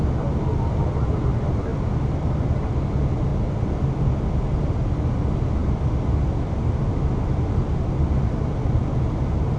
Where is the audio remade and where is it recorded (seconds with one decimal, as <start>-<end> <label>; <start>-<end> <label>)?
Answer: 0.0-9.6 recorded